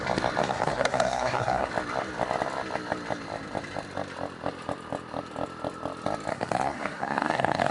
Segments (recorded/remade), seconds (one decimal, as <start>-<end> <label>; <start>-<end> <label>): 0.0-0.4 recorded; 0.4-1.7 remade; 1.7-6.3 recorded; 6.3-7.7 remade